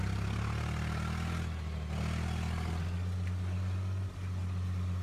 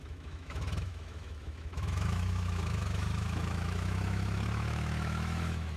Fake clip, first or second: second